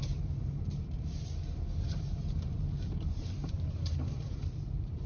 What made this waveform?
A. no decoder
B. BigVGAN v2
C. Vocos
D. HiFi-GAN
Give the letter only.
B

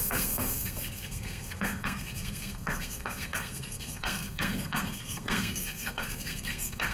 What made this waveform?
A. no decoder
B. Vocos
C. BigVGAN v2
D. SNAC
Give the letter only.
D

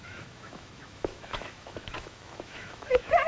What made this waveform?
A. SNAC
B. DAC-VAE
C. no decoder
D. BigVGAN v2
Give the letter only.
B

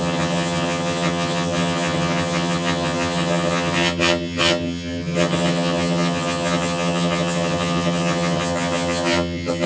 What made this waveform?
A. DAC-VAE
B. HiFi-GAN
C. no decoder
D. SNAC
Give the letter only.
B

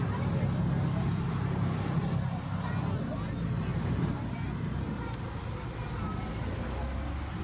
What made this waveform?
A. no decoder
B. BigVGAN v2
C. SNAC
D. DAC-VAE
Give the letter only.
A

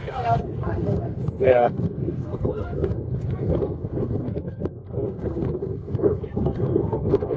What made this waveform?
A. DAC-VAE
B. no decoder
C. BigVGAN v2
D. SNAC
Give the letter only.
D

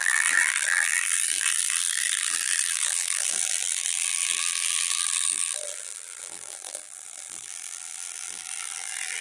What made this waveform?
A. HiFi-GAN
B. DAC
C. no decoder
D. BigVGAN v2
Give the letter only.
D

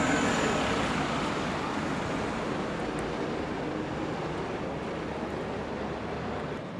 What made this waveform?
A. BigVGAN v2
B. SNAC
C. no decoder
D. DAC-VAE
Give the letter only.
C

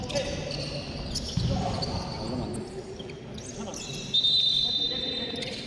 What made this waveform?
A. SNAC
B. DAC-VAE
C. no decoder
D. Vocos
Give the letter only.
C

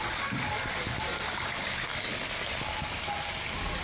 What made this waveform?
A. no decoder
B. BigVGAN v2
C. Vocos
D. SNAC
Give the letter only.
A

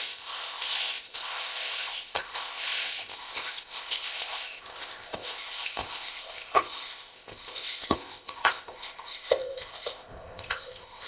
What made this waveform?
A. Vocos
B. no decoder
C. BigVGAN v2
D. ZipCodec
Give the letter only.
D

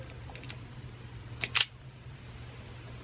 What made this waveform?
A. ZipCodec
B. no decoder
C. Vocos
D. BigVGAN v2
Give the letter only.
B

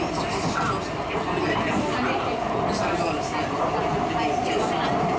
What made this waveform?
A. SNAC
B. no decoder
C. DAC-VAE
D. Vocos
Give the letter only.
B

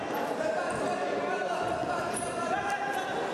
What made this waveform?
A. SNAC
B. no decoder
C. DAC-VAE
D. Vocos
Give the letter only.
B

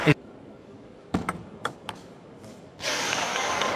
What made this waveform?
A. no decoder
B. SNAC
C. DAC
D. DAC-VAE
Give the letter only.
C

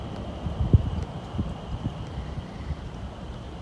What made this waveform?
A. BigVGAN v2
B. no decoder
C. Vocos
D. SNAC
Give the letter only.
B